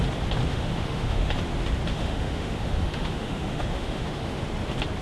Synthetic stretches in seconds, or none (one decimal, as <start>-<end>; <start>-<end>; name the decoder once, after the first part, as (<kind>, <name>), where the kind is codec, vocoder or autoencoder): 0.5-1.3 (autoencoder, DAC-VAE); 1.9-4.4